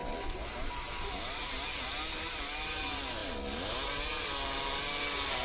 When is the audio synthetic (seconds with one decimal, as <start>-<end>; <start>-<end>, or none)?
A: none